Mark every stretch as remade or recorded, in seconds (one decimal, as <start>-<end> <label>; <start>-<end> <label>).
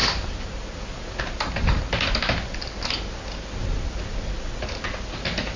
0.0-5.6 recorded